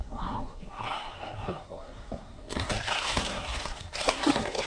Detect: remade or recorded remade